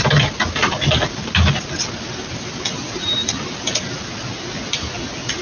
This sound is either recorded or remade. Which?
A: recorded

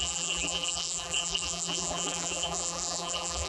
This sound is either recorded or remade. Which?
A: remade